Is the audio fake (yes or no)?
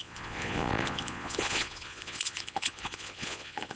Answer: yes